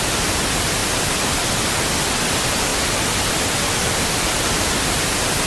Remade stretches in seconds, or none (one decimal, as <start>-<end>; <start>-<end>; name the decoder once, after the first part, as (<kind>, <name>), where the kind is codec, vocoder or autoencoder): none